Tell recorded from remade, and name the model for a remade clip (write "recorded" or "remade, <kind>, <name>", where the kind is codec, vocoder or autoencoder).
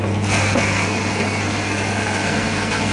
remade, codec, SNAC